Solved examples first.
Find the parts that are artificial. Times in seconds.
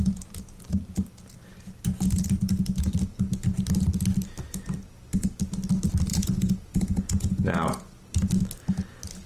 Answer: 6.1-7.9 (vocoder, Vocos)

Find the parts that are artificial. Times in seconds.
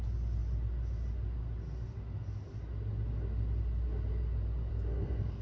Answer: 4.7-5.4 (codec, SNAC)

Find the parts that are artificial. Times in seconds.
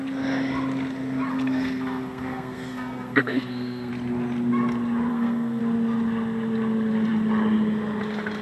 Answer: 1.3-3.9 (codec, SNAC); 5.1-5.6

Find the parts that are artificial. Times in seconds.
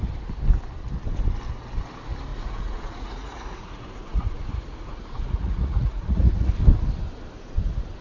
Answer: 2.3-6.5 (vocoder, Vocos)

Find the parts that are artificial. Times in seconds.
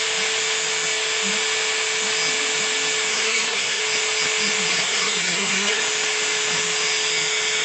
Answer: 3.1-3.8 (codec, SNAC); 4.7-5.8